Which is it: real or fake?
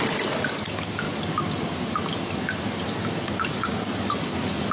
real